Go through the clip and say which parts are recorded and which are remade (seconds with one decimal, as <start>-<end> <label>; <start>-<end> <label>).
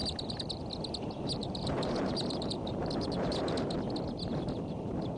0.0-1.4 recorded; 1.4-3.7 remade; 3.7-5.2 recorded